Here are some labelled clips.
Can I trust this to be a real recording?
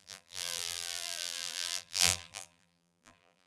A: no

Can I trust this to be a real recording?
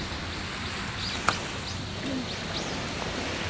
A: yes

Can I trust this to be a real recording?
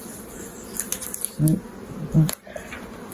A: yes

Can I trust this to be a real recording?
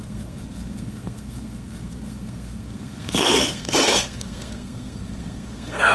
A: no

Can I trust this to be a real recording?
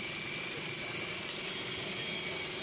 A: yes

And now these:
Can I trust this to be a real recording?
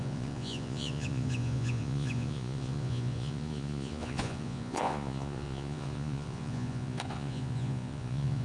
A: no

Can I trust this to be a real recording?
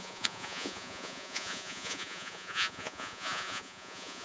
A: no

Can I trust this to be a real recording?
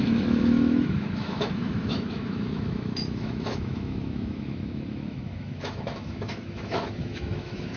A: no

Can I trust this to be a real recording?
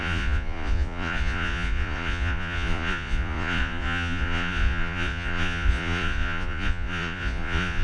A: no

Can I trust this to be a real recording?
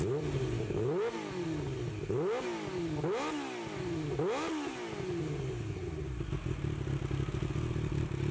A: yes